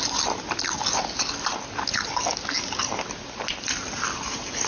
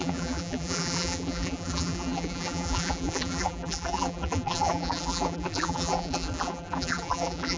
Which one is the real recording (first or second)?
first